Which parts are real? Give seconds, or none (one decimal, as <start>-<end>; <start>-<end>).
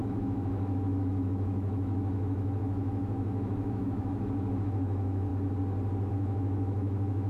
5.3-6.1